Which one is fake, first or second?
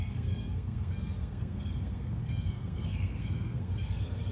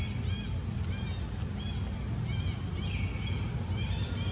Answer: first